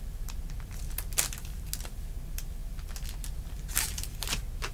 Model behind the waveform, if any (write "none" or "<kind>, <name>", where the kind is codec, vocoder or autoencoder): none